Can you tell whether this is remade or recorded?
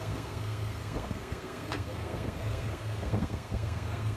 remade